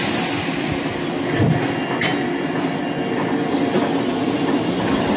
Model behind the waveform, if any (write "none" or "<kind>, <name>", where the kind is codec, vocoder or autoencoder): none